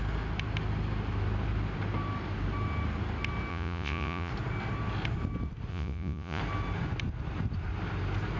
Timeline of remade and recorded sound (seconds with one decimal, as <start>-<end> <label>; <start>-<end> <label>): 0.0-3.5 recorded; 3.5-4.3 remade; 4.3-5.7 recorded; 5.7-6.4 remade; 6.4-8.4 recorded